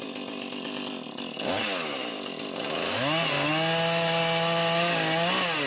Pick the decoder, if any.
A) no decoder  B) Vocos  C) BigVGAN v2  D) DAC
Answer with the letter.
A